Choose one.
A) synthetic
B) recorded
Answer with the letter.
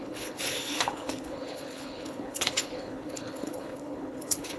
A